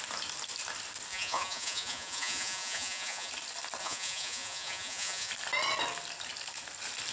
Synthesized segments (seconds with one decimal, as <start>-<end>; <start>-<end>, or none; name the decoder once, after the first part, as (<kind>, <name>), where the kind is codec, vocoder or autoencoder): 1.1-3.3 (vocoder, Vocos); 3.8-5.3

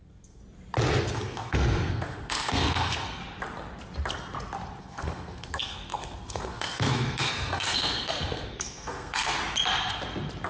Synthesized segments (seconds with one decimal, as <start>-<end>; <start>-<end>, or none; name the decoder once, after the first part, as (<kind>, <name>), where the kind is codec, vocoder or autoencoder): 0.0-0.4 (codec, SNAC); 1.0-3.2; 4.8-9.4

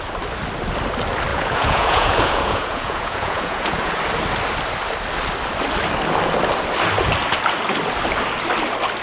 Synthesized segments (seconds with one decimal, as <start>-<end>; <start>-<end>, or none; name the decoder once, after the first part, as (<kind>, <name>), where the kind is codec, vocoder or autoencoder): 1.3-4.0 (vocoder, Vocos)

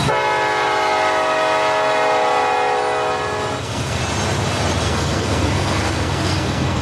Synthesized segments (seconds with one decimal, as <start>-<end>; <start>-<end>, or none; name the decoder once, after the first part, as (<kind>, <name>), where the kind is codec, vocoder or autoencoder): 3.6-4.0 (codec, SNAC); 4.8-6.8

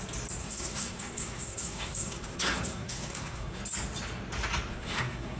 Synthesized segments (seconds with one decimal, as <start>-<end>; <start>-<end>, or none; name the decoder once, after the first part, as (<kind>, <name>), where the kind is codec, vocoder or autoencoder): 0.4-3.6 (codec, SNAC); 4.7-5.4

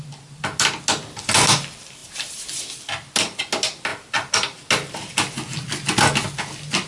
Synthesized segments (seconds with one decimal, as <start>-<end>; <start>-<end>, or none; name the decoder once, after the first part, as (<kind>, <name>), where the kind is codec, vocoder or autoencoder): 2.0-2.5 (vocoder, BigVGAN v2)